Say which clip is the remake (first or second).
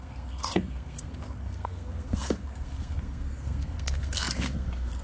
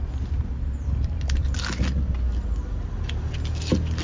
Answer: first